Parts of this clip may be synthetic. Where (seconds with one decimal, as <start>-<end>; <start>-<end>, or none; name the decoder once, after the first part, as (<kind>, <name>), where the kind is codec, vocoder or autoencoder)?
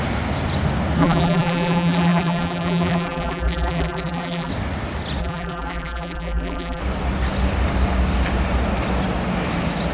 1.0-4.5 (vocoder, BigVGAN v2); 5.2-6.8